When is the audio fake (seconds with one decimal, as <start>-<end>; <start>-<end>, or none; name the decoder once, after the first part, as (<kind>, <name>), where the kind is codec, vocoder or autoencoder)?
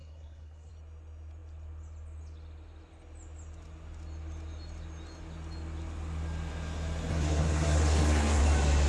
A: 0.0-0.7 (codec, SNAC); 7.1-8.4